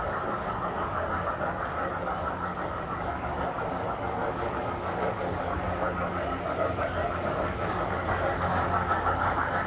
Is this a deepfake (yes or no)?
yes